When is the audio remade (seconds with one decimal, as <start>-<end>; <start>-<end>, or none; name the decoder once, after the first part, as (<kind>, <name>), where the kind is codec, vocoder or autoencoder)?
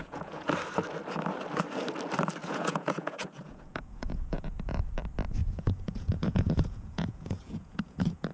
0.0-0.5 (vocoder, Vocos); 2.4-4.9; 5.4-8.3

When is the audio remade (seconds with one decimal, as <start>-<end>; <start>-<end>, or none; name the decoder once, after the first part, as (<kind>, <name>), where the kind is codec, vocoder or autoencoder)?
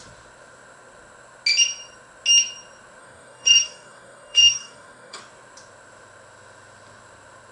3.0-5.2 (codec, DAC)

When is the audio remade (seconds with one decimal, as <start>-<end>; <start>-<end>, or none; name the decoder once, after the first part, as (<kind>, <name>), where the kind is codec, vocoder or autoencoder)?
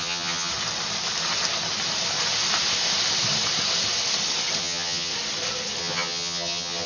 0.0-0.5 (vocoder, HiFi-GAN); 4.6-5.1; 5.8-6.9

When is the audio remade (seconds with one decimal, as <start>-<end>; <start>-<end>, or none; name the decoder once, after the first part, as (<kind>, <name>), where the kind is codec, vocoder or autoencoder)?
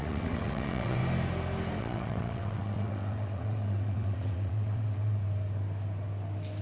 0.0-1.0 (vocoder, WaveNeXt); 1.8-5.2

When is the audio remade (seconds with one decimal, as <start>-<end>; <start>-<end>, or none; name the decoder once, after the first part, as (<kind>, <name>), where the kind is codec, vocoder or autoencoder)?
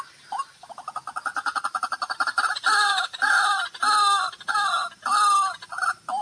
1.3-2.9 (vocoder, BigVGAN v2)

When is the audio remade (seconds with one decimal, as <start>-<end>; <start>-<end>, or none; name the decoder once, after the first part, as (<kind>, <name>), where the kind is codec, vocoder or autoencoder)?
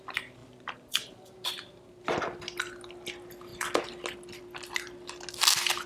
0.4-1.5 (vocoder, BigVGAN v2)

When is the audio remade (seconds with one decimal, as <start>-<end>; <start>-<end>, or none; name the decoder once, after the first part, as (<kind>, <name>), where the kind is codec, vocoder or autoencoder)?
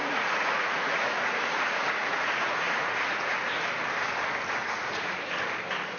0.0-3.6 (vocoder, Vocos); 4.6-5.4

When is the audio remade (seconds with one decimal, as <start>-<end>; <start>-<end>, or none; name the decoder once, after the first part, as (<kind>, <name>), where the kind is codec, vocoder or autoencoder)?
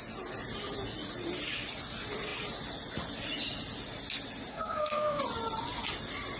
4.5-5.2 (codec, SNAC)